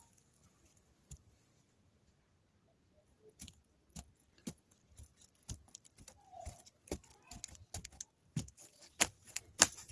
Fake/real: real